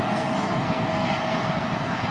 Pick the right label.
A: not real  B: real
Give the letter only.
A